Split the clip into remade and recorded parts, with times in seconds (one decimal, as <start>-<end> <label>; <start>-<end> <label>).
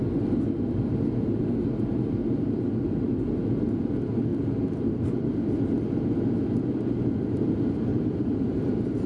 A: 0.0-4.3 recorded; 4.3-5.1 remade; 5.1-7.9 recorded; 7.9-8.7 remade; 8.7-9.1 recorded